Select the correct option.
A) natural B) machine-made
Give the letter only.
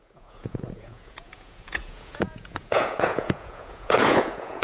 B